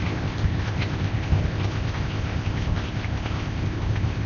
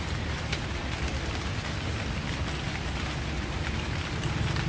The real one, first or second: second